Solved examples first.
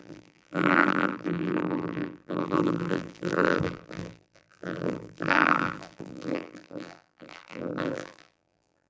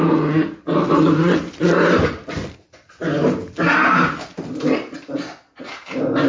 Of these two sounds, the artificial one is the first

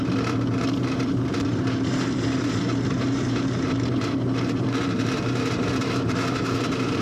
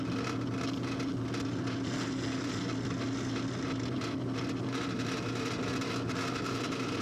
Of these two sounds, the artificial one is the first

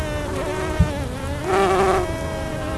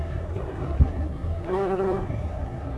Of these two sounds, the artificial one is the second